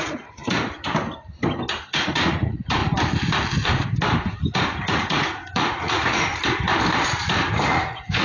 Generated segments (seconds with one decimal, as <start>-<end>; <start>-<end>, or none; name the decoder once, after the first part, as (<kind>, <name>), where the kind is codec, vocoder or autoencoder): 0.0-0.4 (vocoder, Vocos); 1.8-2.8; 4.9-6.3; 7.7-8.2